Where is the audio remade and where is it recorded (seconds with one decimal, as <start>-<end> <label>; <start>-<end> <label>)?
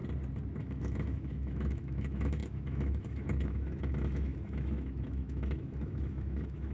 0.0-0.6 recorded; 0.6-6.7 remade